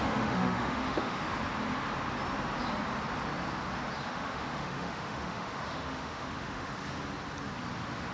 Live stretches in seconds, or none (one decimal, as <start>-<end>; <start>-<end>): 1.2-4.1; 6.7-8.1